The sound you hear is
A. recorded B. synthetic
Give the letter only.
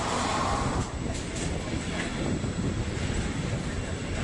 A